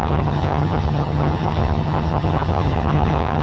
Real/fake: fake